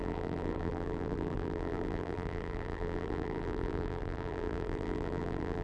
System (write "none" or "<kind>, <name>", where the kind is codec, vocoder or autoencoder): vocoder, BigVGAN v2